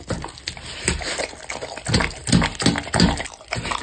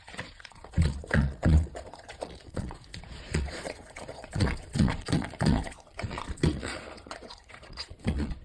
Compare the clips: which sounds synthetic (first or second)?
second